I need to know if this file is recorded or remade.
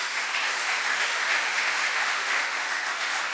remade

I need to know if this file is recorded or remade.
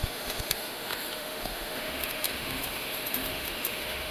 remade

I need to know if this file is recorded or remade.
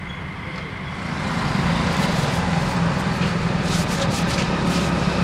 recorded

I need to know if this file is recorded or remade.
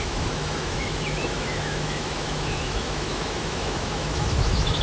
remade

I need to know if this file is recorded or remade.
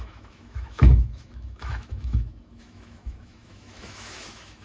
remade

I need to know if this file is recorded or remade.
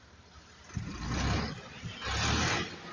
recorded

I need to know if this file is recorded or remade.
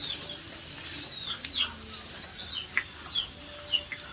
recorded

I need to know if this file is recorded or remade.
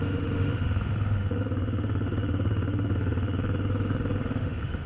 remade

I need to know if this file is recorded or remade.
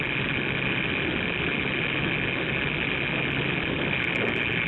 recorded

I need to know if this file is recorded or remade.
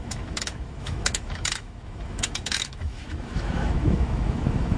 remade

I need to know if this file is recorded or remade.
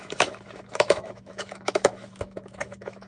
remade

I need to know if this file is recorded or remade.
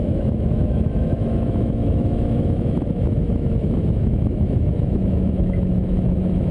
remade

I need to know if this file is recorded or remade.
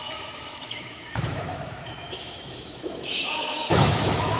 remade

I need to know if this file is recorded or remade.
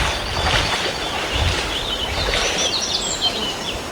recorded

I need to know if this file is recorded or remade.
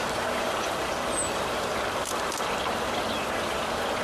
recorded